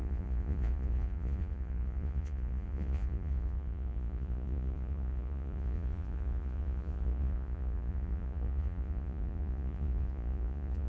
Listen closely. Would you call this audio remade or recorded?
remade